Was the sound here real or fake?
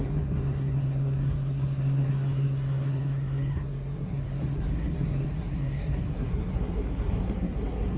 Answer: fake